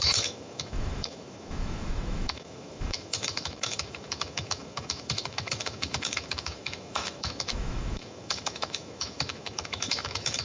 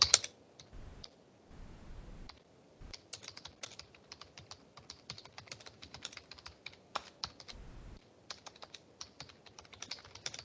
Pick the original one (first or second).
second